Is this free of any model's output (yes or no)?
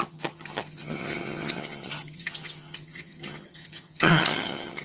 no